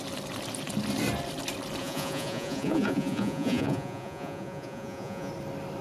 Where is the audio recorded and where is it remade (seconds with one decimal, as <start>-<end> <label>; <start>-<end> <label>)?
0.0-1.8 recorded; 1.8-5.3 remade; 5.3-5.8 recorded